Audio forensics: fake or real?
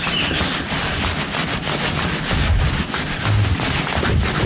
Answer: real